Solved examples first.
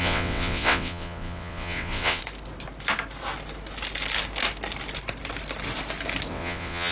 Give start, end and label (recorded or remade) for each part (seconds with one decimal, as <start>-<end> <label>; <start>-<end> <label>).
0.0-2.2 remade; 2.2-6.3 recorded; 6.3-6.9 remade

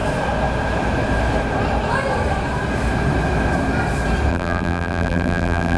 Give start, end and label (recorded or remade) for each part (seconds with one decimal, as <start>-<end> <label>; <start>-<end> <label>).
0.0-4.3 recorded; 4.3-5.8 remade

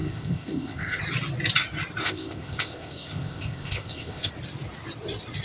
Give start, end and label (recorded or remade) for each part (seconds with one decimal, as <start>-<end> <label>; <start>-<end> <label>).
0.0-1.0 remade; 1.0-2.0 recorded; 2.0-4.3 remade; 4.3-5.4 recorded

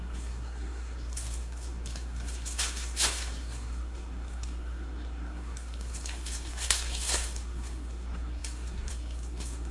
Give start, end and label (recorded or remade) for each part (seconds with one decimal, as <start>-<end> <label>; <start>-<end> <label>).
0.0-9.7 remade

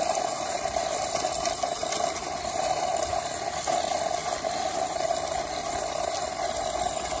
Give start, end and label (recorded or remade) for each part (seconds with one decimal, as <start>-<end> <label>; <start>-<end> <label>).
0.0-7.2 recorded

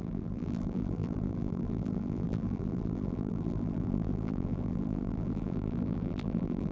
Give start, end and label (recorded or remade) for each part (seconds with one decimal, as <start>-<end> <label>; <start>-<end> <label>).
0.0-6.7 remade

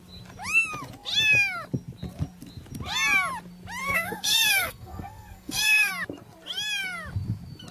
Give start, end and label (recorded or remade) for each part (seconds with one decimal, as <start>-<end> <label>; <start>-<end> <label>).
0.0-3.8 recorded; 3.8-5.9 remade; 5.9-7.7 recorded